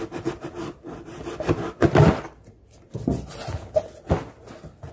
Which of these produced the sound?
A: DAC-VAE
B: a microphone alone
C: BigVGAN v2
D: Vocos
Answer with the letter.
B